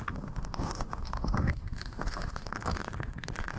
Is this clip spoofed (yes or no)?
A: yes